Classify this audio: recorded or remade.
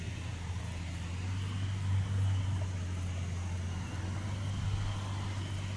recorded